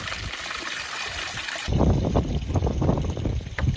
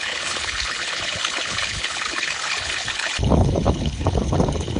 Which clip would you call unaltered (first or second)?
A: first